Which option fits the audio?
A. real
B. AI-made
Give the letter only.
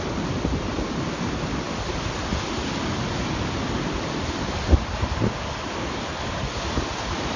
A